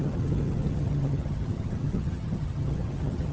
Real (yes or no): no